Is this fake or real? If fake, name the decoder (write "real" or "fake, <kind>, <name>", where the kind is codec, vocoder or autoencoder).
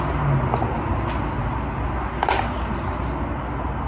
real